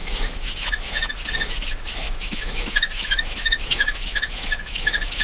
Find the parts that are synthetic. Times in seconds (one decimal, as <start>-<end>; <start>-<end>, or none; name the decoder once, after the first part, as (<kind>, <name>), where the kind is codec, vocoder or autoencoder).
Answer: 0.0-1.2 (autoencoder, DAC-VAE); 2.0-5.2